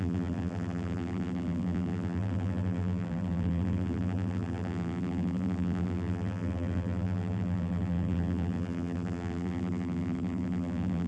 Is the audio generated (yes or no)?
yes